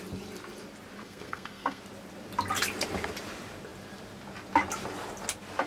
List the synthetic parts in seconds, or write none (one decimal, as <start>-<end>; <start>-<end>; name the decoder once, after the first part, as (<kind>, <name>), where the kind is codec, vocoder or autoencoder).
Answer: 1.0-1.8 (codec, SNAC)